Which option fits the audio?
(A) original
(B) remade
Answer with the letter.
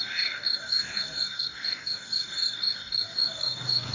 B